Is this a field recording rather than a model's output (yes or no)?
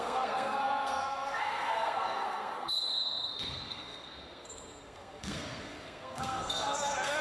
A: no